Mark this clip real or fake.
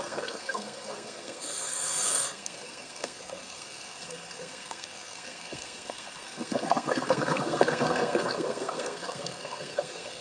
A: fake